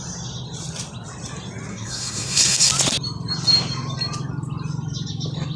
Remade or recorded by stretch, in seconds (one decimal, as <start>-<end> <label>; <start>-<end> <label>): 0.0-1.7 recorded; 1.7-2.7 remade; 2.7-5.6 recorded